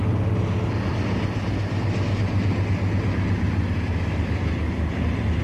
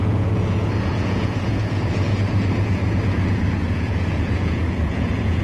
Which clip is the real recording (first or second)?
first